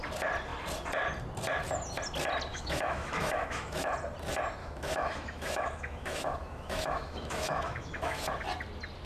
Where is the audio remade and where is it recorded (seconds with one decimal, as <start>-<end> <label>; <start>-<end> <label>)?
0.0-2.5 recorded; 2.5-3.9 remade; 3.9-4.6 recorded; 4.6-8.3 remade; 8.3-9.1 recorded